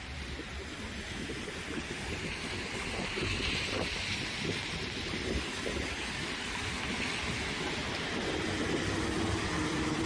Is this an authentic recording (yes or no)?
yes